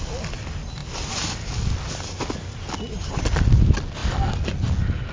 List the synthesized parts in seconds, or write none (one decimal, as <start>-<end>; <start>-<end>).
none